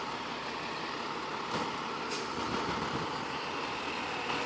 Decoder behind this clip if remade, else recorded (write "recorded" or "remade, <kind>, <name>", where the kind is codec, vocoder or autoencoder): remade, vocoder, BigVGAN v2